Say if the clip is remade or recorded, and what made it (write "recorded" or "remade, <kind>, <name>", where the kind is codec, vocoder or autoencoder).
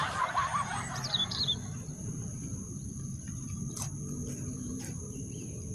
remade, vocoder, BigVGAN v2